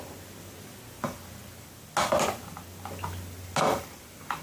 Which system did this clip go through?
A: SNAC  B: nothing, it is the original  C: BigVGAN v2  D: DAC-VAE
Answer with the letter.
B